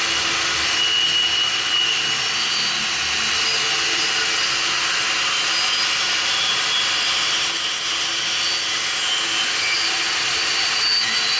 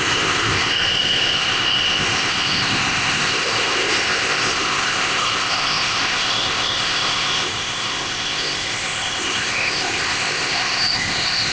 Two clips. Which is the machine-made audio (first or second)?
second